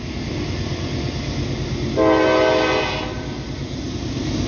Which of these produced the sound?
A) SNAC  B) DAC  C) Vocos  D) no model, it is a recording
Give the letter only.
D